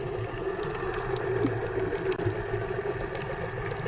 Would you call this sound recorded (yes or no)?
yes